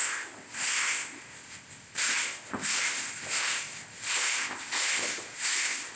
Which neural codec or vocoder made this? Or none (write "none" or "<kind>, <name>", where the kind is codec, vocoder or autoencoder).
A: codec, ZipCodec